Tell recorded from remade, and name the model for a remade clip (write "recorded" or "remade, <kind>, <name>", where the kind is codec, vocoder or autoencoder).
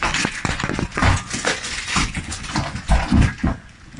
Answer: remade, vocoder, Vocos